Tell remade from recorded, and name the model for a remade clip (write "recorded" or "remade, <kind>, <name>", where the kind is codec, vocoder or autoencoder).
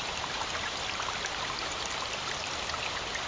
recorded